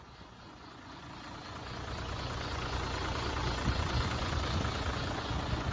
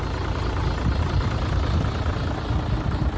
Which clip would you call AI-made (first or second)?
first